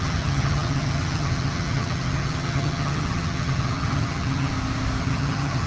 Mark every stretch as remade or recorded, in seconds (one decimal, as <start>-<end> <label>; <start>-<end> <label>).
0.0-4.5 remade; 4.5-5.0 recorded; 5.0-5.7 remade